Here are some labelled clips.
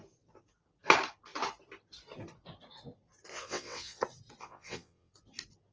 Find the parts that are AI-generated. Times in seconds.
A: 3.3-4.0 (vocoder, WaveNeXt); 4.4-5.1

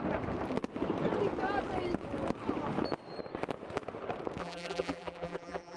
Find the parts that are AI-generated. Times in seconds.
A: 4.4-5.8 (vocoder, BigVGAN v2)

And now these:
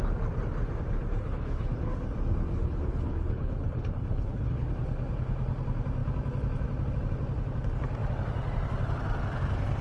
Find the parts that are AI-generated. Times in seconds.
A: 1.1-2.0 (codec, HILCodec); 2.5-4.7

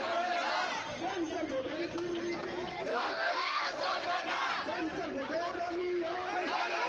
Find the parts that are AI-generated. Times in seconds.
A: 2.9-3.6 (codec, DAC)